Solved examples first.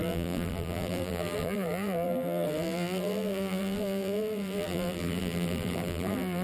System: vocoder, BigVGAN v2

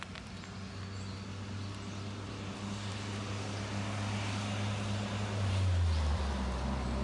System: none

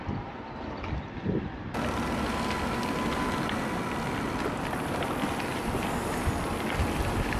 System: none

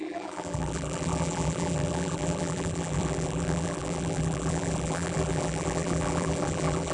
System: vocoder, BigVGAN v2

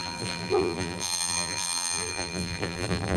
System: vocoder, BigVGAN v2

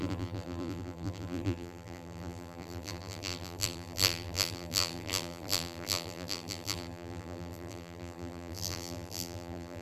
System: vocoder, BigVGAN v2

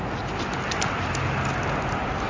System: none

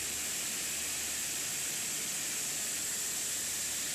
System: none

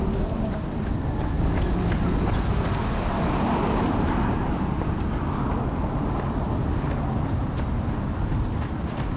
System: none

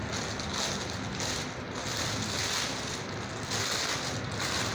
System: none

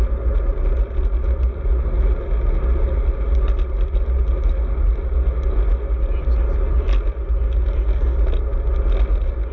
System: none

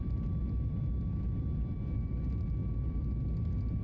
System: vocoder, BigVGAN v2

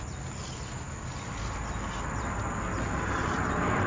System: none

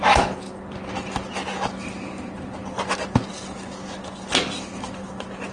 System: none